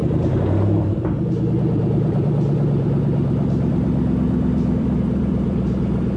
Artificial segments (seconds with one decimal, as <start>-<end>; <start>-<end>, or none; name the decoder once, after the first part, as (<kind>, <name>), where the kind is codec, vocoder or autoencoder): 0.0-6.2 (vocoder, BigVGAN v2)